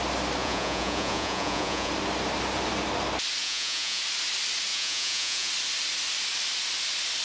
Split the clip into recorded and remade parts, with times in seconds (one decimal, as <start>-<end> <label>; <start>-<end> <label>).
0.0-0.4 recorded; 0.4-1.9 remade; 1.9-3.4 recorded; 3.4-4.0 remade; 4.0-4.7 recorded; 4.7-5.5 remade; 5.5-7.2 recorded